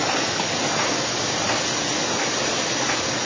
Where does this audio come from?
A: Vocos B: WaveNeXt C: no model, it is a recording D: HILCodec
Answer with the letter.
C